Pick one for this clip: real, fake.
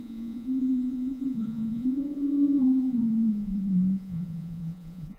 fake